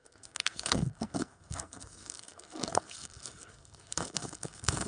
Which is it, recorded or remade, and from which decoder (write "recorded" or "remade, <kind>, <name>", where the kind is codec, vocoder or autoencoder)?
remade, codec, SNAC